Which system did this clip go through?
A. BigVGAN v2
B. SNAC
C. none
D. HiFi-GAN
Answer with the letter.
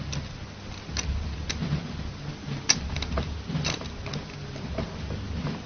C